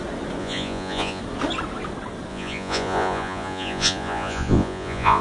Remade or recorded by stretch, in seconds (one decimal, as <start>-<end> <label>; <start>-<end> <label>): 0.0-0.4 recorded; 0.4-1.2 remade; 1.2-2.3 recorded; 2.3-5.2 remade